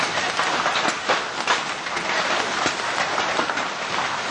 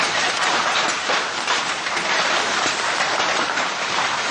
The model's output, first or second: second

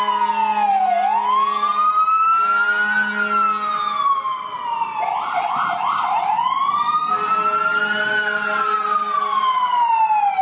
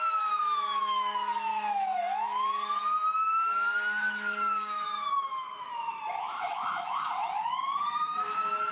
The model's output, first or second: second